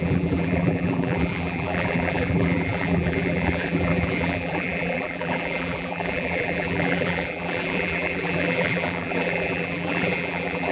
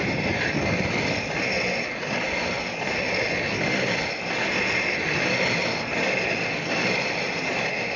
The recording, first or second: second